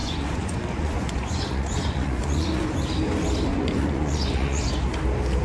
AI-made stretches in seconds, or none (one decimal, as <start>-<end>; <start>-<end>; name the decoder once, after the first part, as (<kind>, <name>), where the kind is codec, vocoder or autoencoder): 0.0-2.7 (vocoder, Vocos); 3.5-4.7